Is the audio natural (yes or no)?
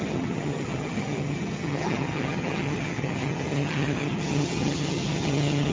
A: no